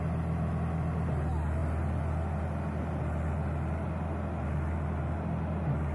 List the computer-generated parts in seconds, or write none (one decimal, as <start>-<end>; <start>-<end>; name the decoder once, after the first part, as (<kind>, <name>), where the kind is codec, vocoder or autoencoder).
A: none